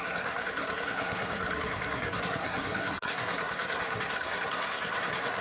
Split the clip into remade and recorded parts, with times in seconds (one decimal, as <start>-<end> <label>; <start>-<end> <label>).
0.0-5.4 remade